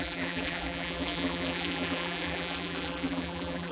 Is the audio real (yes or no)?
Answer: no